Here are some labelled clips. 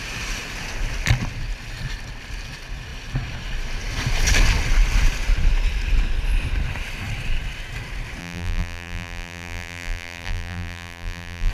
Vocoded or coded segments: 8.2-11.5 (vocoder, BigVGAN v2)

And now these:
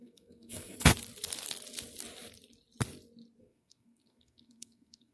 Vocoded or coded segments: 0.0-0.9 (codec, SNAC); 3.4-5.1

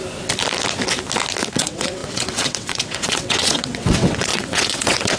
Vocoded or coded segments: 1.5-5.2 (vocoder, WaveNeXt)

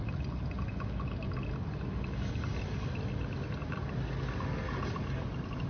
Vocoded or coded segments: none